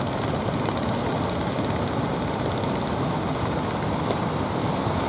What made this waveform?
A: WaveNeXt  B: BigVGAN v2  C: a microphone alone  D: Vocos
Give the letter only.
C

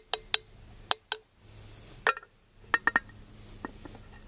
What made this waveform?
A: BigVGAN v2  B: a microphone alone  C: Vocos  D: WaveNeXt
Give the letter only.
B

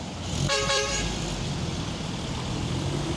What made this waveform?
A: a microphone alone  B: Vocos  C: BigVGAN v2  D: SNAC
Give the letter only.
C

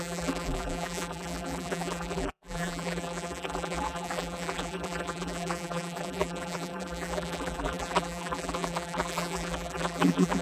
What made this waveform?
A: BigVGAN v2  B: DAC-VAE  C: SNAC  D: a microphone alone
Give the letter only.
A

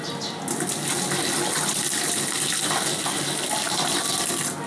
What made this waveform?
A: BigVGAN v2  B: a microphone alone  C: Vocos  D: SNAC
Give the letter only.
B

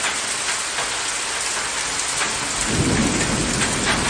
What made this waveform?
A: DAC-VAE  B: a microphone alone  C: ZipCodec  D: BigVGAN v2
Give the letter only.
B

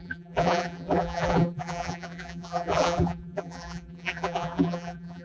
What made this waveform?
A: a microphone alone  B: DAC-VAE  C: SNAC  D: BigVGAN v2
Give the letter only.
D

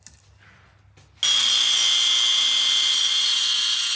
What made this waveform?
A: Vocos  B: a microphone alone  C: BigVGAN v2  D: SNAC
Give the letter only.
B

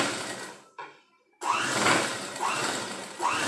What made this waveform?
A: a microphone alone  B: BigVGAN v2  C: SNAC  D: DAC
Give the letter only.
A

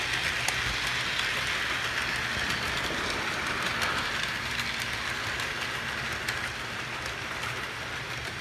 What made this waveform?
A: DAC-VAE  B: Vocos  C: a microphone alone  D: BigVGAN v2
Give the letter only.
C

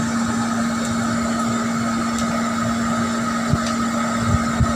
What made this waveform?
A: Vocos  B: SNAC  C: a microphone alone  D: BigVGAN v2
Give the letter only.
C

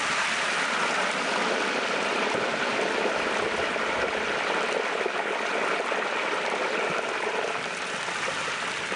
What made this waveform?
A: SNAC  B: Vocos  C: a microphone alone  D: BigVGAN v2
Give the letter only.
D